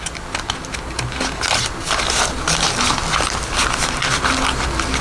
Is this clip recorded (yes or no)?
yes